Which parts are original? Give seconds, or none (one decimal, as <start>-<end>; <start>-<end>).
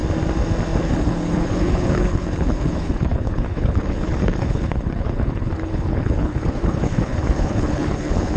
0.0-0.8